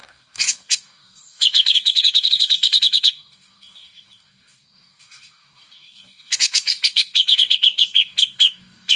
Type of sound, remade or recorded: remade